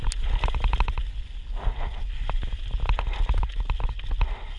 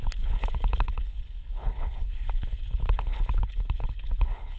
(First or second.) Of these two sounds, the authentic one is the first